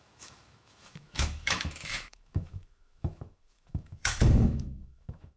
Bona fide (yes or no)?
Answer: no